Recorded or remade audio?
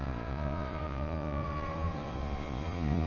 remade